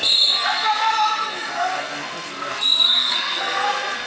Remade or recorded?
remade